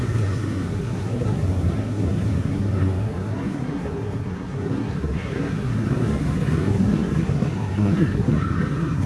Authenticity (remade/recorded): remade